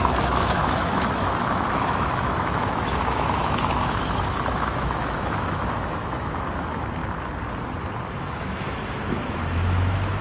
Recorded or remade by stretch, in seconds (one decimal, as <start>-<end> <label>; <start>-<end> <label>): 0.0-7.0 remade; 7.0-8.2 recorded; 8.2-10.2 remade